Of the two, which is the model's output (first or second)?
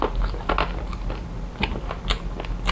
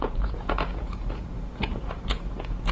second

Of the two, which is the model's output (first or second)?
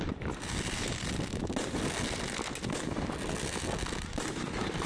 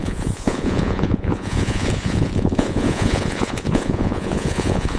second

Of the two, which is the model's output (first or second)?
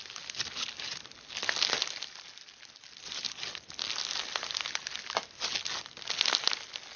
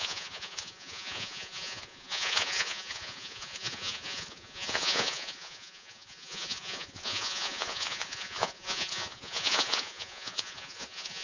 second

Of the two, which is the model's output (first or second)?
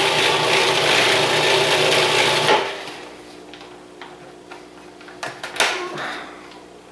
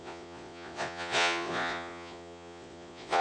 second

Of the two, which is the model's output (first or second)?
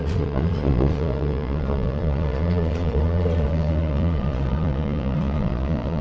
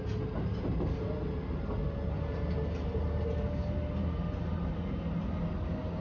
first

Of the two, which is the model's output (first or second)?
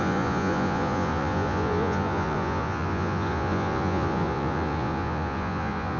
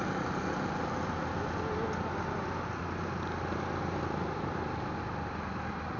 first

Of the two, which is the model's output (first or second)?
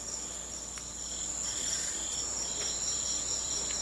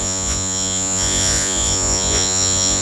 second